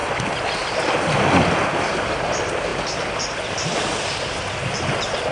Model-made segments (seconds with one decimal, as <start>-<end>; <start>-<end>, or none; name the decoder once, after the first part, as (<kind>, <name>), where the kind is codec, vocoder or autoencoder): none